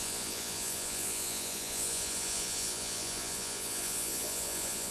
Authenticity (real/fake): fake